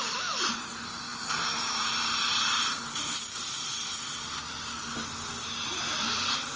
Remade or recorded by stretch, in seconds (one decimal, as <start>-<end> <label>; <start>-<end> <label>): 0.0-6.6 recorded